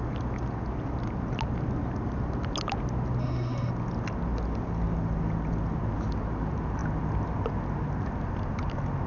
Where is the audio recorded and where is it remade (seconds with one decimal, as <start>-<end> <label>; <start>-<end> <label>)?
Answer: 0.0-3.2 recorded; 3.2-3.7 remade; 3.7-9.1 recorded